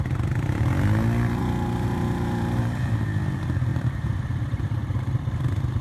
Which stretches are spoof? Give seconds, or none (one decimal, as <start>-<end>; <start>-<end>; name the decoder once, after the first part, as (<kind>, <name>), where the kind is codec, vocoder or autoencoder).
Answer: 1.4-2.9 (vocoder, BigVGAN v2); 3.7-4.2